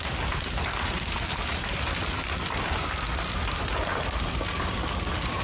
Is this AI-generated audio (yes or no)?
no